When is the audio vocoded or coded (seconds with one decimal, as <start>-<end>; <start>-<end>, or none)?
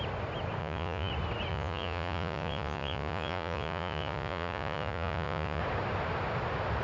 0.6-1.1; 1.5-5.6